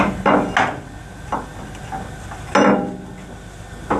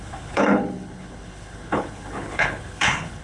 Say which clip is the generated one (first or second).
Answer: second